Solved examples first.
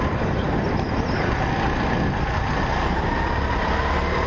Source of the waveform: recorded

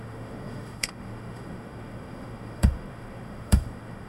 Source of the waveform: remade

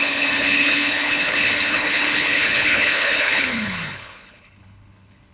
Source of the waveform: remade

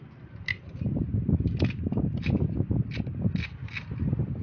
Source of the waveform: recorded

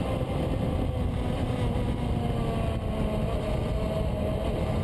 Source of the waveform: recorded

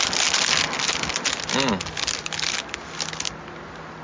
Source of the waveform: recorded